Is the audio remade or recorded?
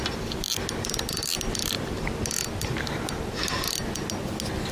recorded